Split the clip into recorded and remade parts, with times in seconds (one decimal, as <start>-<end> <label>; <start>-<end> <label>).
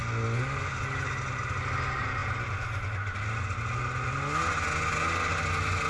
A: 0.0-5.9 recorded